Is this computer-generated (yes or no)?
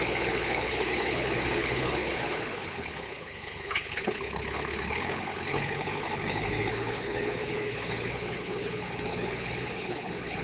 yes